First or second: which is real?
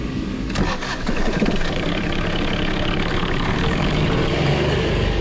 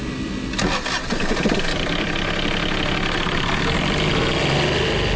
second